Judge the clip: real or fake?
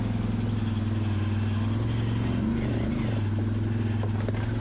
real